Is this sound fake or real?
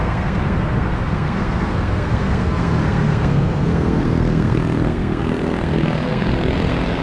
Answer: fake